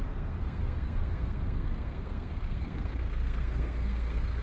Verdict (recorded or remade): remade